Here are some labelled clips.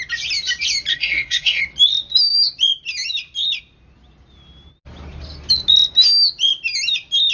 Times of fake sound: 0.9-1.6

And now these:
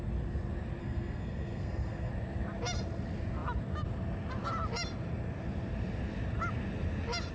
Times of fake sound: 0.8-2.1

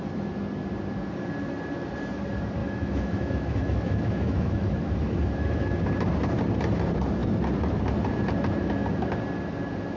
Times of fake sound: 2.6-5.8

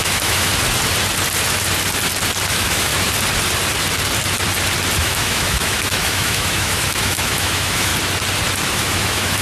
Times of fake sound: 0.0-0.5; 2.5-2.9; 5.0-7.9; 8.7-9.4